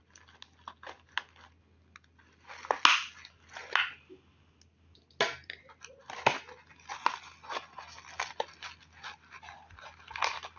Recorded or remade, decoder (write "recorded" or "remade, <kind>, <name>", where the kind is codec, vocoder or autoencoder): recorded